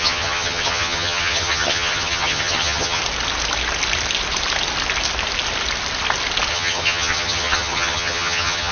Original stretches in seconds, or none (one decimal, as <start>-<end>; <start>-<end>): 3.0-6.5